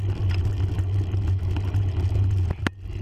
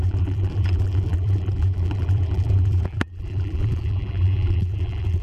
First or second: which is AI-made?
second